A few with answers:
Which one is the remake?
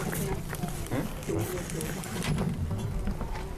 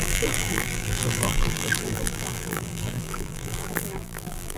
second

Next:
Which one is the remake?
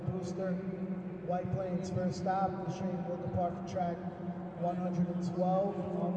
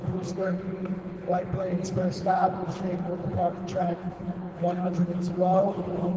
second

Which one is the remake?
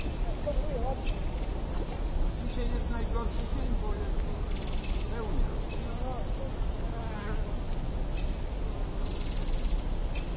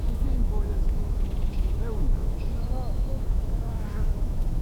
second